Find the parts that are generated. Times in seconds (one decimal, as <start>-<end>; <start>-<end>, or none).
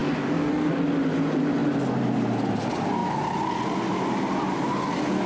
0.0-0.7